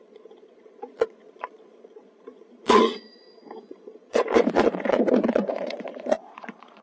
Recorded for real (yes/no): no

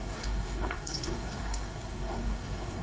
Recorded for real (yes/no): no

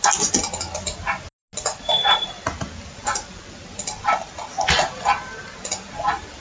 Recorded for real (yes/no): yes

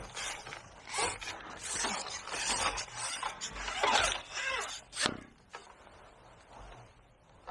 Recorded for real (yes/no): yes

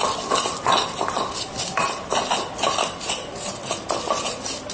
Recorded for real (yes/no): yes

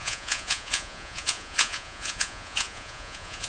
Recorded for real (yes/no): no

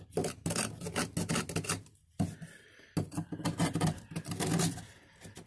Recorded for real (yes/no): yes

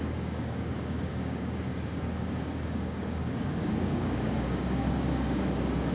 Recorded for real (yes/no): no